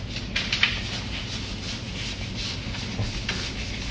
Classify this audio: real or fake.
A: real